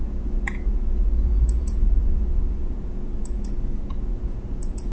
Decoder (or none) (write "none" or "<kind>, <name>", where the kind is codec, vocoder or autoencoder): vocoder, Vocos